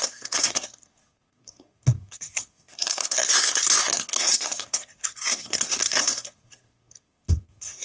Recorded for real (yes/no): no